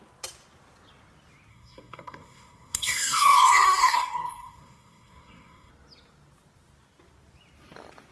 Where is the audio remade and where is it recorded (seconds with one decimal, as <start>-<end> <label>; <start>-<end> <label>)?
0.0-1.5 recorded; 1.5-5.7 remade; 5.7-8.1 recorded